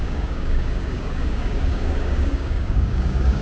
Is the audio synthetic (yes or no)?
yes